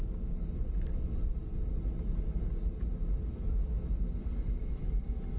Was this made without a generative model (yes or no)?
yes